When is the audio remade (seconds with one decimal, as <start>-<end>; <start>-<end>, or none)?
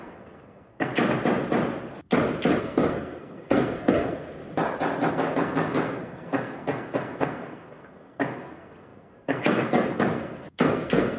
0.0-0.9; 2.6-4.4; 5.1-11.2